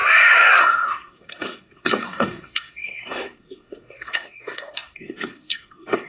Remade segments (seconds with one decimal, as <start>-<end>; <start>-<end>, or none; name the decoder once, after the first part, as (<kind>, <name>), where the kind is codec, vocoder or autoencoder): 0.6-6.1 (codec, SNAC)